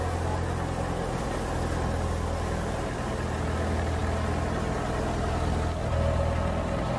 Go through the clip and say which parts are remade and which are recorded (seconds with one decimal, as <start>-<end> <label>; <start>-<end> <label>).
0.0-7.0 recorded